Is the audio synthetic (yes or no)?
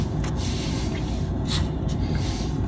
no